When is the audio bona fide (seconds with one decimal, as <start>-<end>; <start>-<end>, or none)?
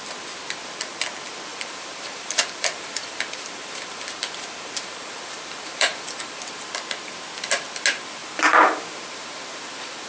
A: 0.0-1.5; 6.4-8.2